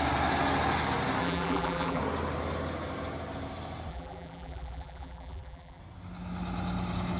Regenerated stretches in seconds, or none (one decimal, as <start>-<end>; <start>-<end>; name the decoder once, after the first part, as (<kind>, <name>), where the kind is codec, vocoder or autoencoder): 1.2-2.0 (vocoder, BigVGAN v2); 3.9-5.8